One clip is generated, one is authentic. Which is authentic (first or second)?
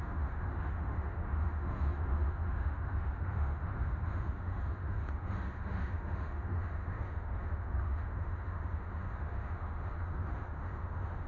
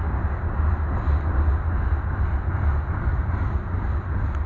second